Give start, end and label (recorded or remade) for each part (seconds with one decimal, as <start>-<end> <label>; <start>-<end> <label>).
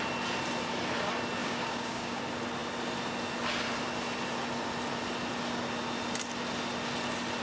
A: 0.0-1.4 recorded; 1.4-2.2 remade; 2.2-7.4 recorded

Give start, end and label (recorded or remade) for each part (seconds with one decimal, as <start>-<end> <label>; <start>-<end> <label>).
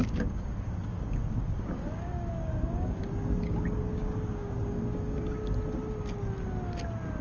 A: 0.0-5.4 remade; 5.4-7.2 recorded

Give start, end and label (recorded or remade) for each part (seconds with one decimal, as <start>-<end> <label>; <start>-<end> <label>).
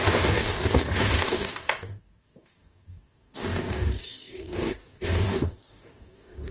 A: 0.0-6.5 remade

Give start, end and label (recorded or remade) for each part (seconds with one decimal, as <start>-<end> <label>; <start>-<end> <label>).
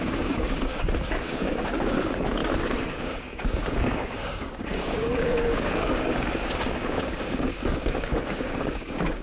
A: 0.0-2.4 remade; 2.4-3.0 recorded; 3.0-9.2 remade